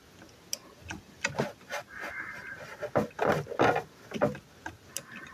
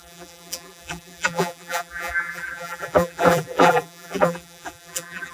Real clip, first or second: first